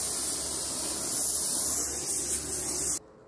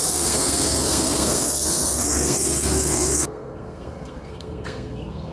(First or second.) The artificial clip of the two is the second